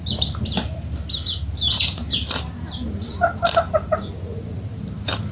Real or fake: real